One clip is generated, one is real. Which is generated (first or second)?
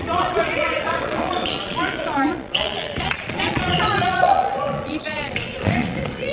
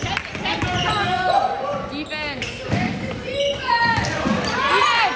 first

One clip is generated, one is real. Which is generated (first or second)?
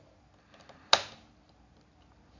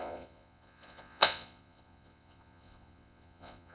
second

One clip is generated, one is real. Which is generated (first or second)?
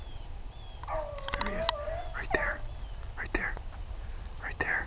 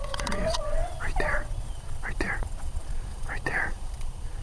second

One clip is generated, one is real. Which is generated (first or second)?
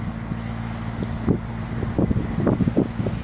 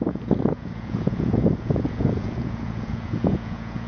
second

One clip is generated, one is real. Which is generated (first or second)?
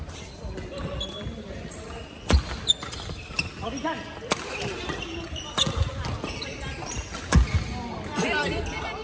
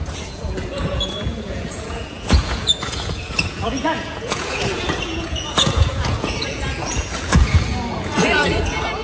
second